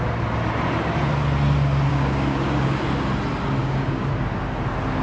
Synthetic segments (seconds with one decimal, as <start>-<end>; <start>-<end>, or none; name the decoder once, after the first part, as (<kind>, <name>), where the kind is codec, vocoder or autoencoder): 1.9-2.8 (codec, DAC); 3.6-4.1